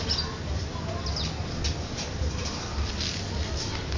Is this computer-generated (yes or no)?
no